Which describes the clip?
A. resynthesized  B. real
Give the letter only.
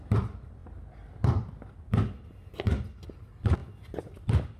B